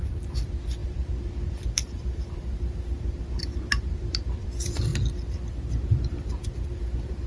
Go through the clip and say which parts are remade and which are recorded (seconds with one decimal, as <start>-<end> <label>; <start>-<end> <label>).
0.0-4.9 remade; 4.9-6.7 recorded; 6.7-7.3 remade